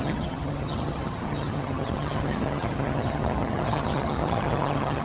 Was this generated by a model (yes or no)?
yes